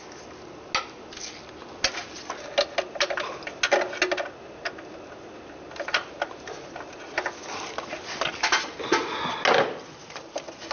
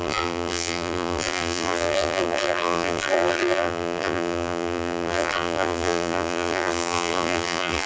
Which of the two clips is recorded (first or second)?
first